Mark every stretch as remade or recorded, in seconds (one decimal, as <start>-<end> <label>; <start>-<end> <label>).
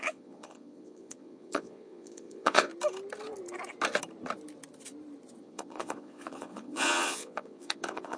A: 0.0-2.7 remade; 2.7-5.4 recorded; 5.4-8.2 remade